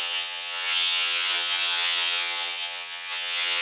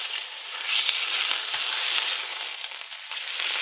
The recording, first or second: second